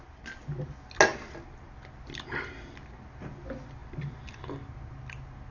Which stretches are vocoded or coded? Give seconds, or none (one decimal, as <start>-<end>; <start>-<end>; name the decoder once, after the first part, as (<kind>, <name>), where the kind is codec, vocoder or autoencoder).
none